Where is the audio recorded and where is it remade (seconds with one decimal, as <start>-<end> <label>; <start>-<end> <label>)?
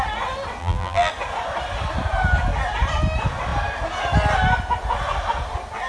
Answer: 0.0-0.6 recorded; 0.6-1.1 remade; 1.1-5.9 recorded